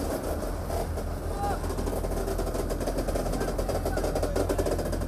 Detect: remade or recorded recorded